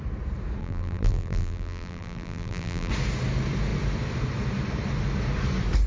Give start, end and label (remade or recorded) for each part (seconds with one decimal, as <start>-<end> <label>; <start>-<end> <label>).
0.0-0.6 recorded; 0.6-2.9 remade; 2.9-5.9 recorded

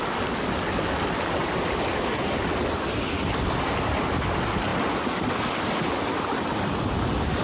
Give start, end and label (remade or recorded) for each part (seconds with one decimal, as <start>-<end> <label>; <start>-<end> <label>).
0.0-7.4 recorded

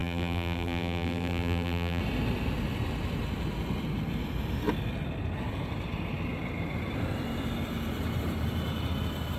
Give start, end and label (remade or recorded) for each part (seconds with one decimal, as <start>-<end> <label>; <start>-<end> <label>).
0.0-2.0 remade; 2.0-9.4 recorded

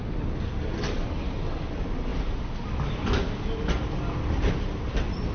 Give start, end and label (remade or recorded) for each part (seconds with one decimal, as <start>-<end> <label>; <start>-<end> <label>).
0.0-5.3 recorded

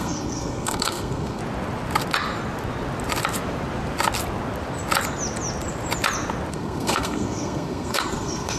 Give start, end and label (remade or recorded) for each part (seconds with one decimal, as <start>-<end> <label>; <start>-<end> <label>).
0.0-1.4 remade; 1.4-6.5 recorded; 6.5-8.6 remade

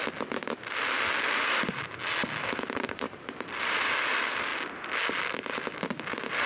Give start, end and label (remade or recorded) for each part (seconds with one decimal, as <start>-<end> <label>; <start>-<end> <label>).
0.0-6.5 recorded